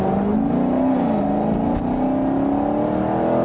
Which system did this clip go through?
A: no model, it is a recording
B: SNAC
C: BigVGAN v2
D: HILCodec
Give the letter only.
A